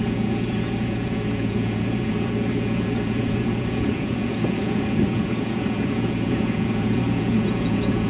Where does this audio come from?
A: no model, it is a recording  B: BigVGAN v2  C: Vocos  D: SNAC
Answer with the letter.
C